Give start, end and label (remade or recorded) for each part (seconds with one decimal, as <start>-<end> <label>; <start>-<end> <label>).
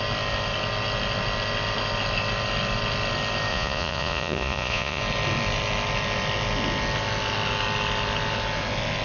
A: 0.0-3.5 recorded; 3.5-5.0 remade; 5.0-9.0 recorded